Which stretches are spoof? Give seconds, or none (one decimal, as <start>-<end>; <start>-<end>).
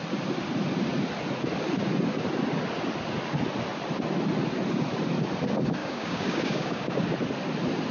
5.8-7.0